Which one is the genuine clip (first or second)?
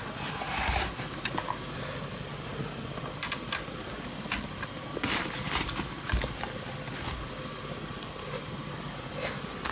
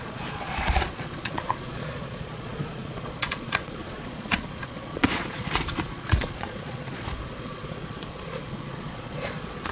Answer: first